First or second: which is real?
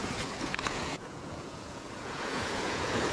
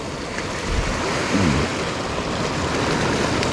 second